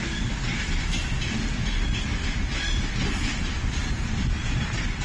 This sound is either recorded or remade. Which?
recorded